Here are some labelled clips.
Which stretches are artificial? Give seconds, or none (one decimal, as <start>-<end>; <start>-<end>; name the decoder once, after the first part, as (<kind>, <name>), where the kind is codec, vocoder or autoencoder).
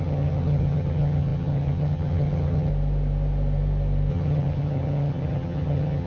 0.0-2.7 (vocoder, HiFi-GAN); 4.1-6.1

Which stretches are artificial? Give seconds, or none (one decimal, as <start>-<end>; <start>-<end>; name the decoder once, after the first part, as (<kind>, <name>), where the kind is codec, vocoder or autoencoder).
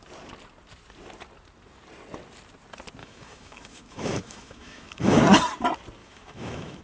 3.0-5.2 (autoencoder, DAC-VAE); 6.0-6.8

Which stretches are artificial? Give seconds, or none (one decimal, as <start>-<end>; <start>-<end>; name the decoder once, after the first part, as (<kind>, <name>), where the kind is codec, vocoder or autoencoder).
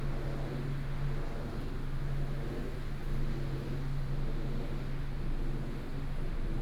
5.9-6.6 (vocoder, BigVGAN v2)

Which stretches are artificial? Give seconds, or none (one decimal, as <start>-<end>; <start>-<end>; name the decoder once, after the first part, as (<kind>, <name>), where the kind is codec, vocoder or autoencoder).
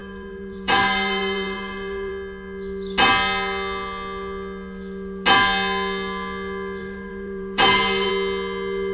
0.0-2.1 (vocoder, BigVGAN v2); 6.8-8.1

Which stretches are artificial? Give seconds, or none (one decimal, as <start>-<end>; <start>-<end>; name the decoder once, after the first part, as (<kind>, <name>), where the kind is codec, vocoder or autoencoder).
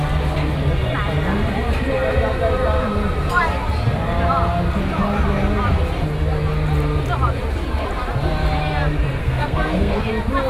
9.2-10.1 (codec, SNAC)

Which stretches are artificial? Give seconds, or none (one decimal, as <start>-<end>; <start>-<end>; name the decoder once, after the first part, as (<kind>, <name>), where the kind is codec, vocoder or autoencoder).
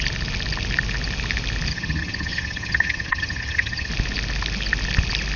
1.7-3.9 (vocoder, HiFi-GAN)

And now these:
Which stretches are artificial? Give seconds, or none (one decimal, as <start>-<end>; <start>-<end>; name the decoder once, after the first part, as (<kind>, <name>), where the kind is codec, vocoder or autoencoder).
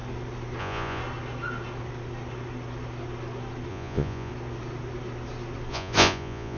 0.6-1.0 (vocoder, Vocos); 3.7-4.3; 5.7-6.6